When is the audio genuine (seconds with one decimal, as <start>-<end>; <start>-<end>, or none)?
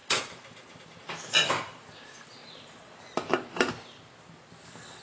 3.0-5.0